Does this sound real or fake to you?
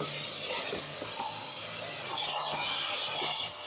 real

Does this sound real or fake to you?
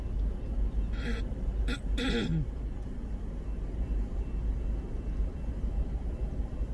real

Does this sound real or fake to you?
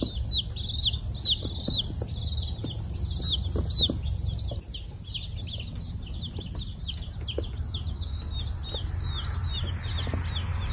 real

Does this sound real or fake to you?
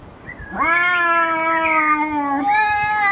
real